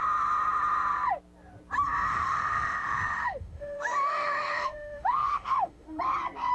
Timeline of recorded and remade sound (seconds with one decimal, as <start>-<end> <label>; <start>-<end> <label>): 0.0-2.1 recorded; 2.1-6.0 remade; 6.0-6.5 recorded